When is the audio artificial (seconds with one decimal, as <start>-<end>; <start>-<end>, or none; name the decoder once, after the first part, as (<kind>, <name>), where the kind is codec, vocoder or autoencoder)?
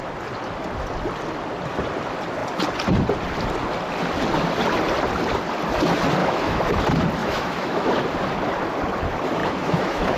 6.2-6.7 (autoencoder, DAC-VAE); 7.2-7.9; 9.4-10.2